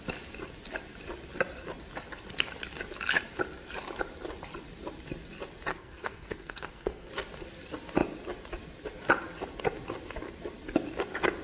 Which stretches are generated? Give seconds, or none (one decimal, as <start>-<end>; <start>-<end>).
5.7-7.1